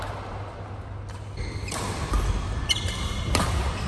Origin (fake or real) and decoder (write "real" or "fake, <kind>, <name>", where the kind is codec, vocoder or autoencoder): real